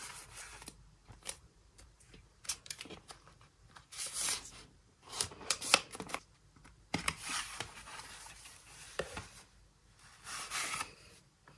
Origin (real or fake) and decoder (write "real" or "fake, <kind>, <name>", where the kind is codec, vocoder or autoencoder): fake, vocoder, BigVGAN v2